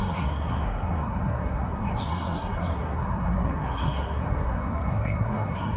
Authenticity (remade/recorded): remade